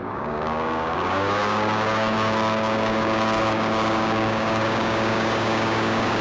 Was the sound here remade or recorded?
remade